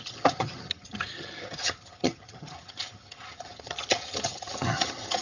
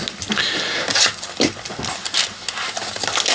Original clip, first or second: second